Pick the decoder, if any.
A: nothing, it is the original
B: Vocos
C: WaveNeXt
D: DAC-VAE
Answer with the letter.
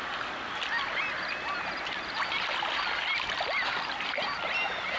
A